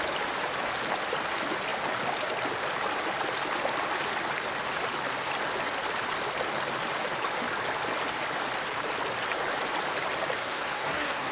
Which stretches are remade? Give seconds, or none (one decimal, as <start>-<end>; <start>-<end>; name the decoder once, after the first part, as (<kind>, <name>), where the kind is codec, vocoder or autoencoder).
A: 10.4-11.3 (codec, SNAC)